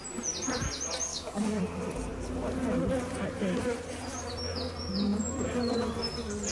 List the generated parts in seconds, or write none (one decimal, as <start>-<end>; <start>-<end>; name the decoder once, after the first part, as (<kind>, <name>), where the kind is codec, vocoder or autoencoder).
1.1-1.6 (codec, DAC)